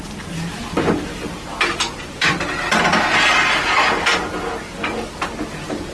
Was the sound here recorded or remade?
recorded